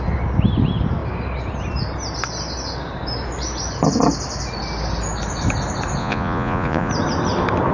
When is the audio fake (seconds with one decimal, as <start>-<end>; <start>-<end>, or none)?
6.0-6.9